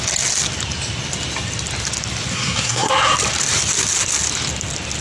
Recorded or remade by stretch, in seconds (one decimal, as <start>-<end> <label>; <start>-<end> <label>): 0.0-2.3 recorded; 2.3-2.9 remade; 2.9-5.0 recorded